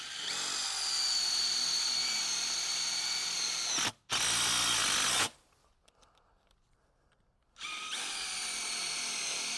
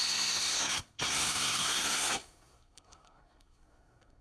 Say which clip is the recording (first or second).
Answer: first